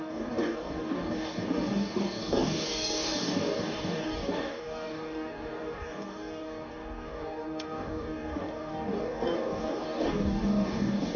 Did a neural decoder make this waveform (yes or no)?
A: yes